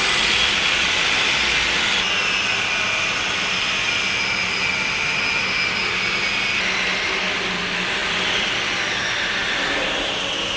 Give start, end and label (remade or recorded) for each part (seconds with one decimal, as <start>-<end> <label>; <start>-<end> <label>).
0.0-10.6 recorded